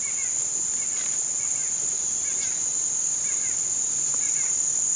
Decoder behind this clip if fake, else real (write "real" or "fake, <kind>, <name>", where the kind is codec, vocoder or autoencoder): real